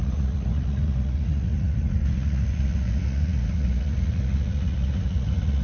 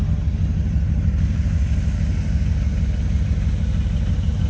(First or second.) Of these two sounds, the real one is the second